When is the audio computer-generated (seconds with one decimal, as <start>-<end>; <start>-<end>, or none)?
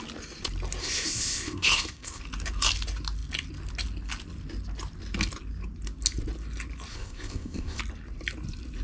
0.8-2.2; 6.9-7.8